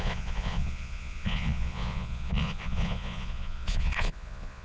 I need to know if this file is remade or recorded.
remade